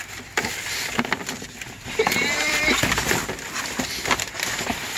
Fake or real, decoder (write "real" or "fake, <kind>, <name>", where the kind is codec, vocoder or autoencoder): fake, vocoder, BigVGAN v2